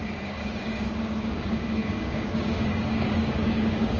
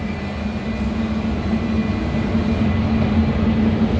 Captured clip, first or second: second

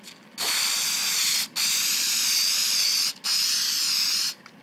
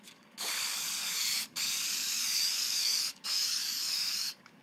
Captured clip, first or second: first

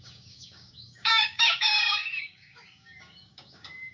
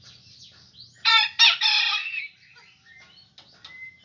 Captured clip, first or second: second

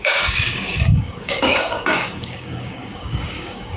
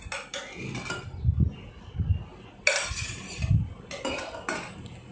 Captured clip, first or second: second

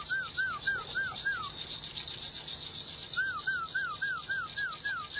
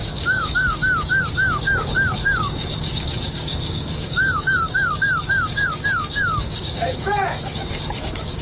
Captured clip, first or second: first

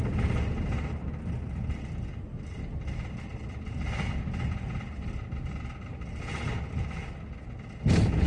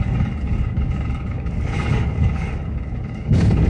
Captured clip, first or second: first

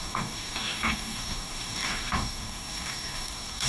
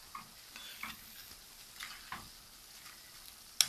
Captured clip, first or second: second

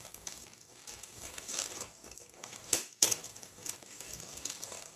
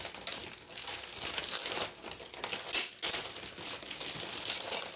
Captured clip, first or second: second